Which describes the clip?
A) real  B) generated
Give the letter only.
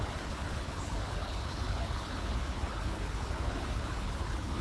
B